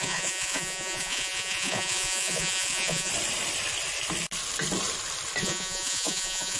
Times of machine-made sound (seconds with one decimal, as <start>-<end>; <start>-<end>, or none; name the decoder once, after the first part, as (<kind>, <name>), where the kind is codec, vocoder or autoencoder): 0.0-3.1 (vocoder, Vocos); 5.4-6.6